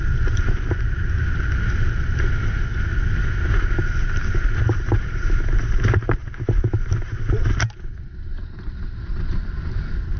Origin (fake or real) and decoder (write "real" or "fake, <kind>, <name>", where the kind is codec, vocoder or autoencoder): real